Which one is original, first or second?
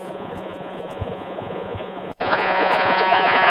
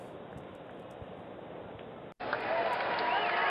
second